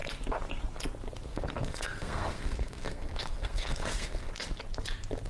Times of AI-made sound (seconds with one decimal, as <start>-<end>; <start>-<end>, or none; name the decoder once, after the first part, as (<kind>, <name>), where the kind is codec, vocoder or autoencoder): 1.3-4.3 (codec, SNAC)